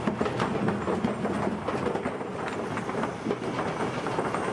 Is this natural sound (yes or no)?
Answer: yes